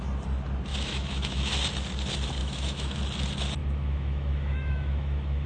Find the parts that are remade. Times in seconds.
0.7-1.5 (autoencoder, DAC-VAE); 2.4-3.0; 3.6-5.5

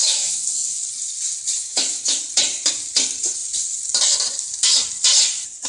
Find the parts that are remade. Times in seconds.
0.0-0.8 (autoencoder, DAC-VAE); 1.6-2.2

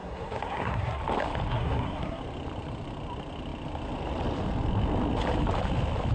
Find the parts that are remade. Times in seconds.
0.0-1.0 (codec, SNAC); 1.5-2.2